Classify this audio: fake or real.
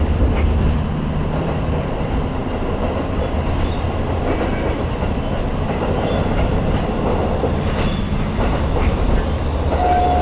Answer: fake